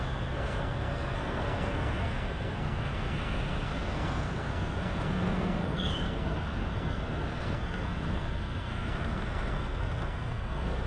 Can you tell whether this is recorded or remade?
remade